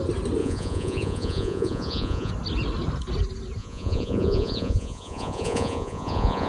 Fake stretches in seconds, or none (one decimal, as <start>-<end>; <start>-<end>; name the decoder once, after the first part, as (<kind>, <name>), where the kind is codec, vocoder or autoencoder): 0.4-2.3 (vocoder, Vocos); 3.6-6.5